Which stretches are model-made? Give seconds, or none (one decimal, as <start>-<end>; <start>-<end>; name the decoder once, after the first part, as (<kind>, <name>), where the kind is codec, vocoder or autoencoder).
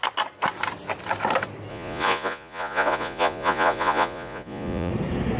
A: 1.7-4.9 (vocoder, Vocos)